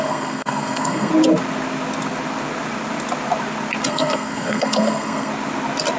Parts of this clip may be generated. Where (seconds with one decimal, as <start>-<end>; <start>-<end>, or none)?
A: 0.0-1.1; 3.9-5.3

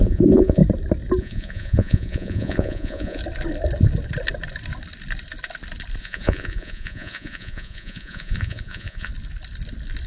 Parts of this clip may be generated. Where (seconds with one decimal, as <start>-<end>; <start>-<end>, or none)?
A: 0.0-0.6; 1.2-3.2; 6.0-9.1